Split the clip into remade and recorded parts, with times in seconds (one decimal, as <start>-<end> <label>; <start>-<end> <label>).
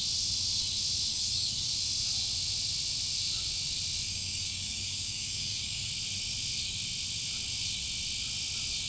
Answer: 0.0-1.1 recorded; 1.1-1.7 remade; 1.7-4.1 recorded; 4.1-5.9 remade; 5.9-8.9 recorded